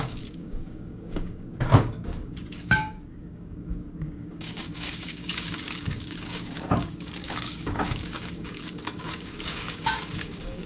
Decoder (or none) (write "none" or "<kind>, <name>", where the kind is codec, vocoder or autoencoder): codec, DAC